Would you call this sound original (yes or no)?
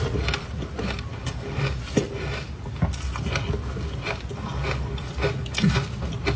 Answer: yes